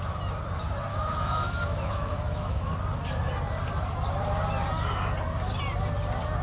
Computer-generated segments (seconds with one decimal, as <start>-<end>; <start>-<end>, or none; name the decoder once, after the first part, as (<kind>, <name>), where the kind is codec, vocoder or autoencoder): 0.9-2.7 (autoencoder, DAC-VAE)